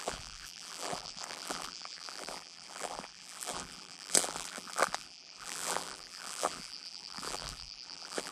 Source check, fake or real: fake